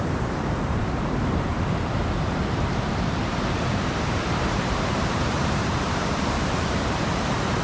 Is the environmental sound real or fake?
fake